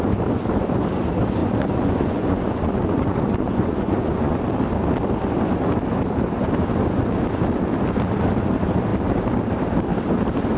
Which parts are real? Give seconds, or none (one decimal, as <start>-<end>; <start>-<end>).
0.0-1.4; 4.4-10.6